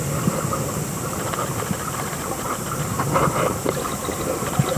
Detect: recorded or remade recorded